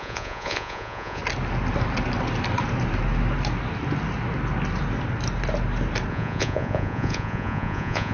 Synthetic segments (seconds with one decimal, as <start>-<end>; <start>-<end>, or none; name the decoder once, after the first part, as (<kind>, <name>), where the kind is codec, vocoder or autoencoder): 0.0-1.2 (vocoder, Vocos); 6.1-8.1